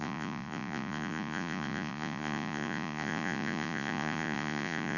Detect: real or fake fake